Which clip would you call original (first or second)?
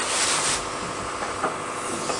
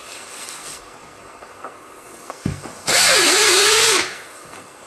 first